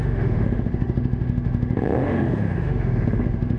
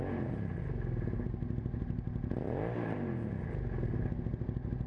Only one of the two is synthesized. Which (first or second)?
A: first